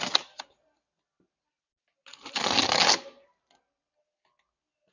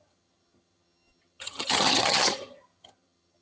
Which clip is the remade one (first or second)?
second